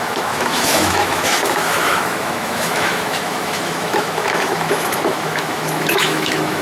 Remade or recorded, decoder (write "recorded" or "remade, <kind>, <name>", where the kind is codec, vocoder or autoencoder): remade, autoencoder, DAC-VAE